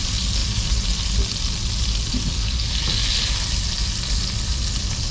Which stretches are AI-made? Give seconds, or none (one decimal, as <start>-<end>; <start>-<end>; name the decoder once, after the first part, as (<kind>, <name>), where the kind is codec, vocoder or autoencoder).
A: none